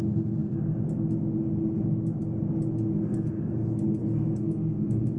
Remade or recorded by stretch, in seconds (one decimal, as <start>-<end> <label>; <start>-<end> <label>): 0.0-4.0 recorded; 4.0-5.2 remade